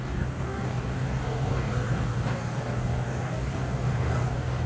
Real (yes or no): no